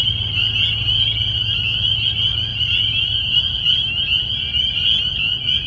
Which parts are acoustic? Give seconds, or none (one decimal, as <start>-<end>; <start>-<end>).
0.0-5.7